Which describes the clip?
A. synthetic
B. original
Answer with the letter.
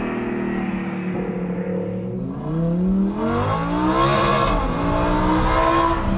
B